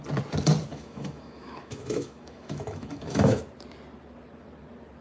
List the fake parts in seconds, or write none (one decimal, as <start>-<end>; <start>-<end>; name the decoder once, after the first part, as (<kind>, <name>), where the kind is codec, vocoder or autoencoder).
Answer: 0.7-3.4 (autoencoder, DAC-VAE)